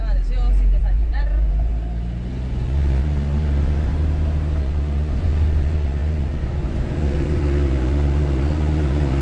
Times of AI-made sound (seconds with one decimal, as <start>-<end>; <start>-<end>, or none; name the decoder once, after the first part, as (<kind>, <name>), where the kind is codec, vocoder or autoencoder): 0.8-1.7 (vocoder, Vocos); 2.5-3.9; 4.6-9.2